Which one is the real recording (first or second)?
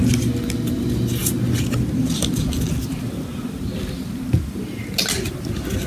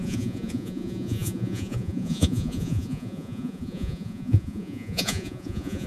first